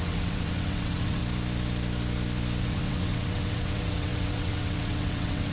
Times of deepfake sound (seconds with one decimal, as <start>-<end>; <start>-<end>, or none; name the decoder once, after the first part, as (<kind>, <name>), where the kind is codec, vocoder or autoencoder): 0.0-1.2 (vocoder, WaveNeXt); 2.6-5.5